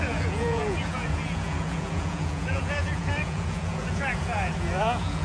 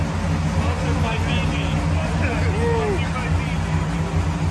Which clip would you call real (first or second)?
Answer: second